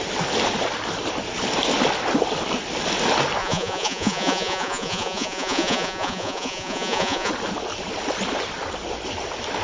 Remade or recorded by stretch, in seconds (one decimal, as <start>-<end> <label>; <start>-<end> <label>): 0.0-3.4 recorded; 3.4-7.3 remade; 7.3-9.6 recorded